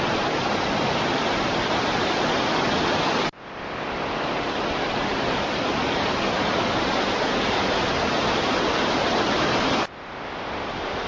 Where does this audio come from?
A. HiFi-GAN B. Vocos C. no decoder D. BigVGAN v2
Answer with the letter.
C